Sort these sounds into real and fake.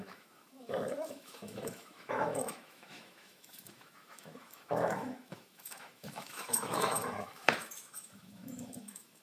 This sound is fake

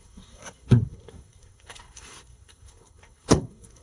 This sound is fake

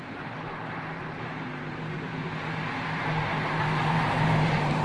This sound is fake